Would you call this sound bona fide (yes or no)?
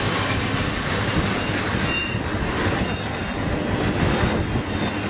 yes